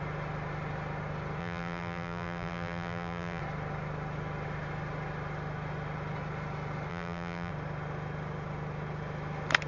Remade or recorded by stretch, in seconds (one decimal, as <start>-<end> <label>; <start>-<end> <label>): 0.0-1.4 recorded; 1.4-3.4 remade; 3.4-6.9 recorded; 6.9-7.5 remade; 7.5-9.7 recorded